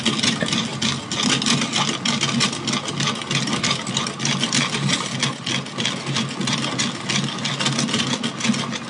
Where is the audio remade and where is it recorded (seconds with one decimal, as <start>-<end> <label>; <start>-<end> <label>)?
0.0-8.9 recorded